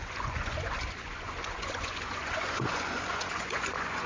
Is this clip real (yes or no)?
no